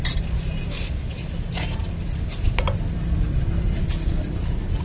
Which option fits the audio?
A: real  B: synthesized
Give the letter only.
A